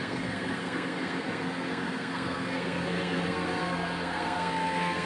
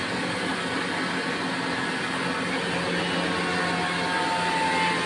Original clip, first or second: second